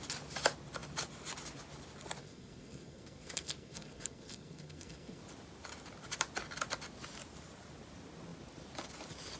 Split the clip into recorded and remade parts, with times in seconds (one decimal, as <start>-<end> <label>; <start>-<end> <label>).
0.0-2.2 recorded; 2.2-5.2 remade; 5.2-9.4 recorded

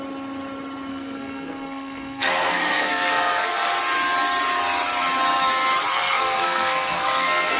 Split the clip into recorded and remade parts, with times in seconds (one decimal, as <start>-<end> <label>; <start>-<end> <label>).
0.0-0.9 recorded; 0.9-3.7 remade; 3.7-5.9 recorded; 5.9-7.6 remade